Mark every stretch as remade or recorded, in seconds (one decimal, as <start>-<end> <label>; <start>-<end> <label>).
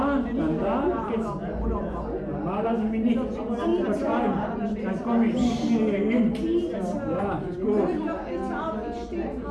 0.0-9.5 recorded